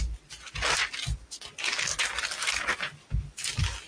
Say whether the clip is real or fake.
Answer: real